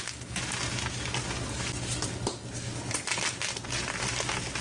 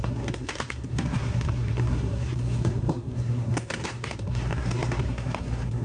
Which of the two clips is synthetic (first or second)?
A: second